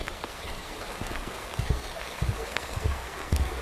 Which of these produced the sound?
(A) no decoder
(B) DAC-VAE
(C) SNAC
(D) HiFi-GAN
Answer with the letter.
C